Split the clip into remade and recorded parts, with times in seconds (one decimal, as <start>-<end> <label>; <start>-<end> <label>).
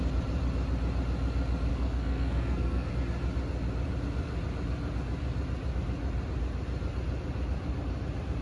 0.0-1.7 recorded; 1.7-2.9 remade; 2.9-8.4 recorded